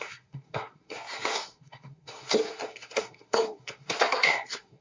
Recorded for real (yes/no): no